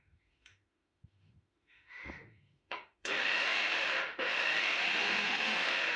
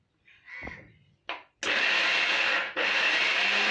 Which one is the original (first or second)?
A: second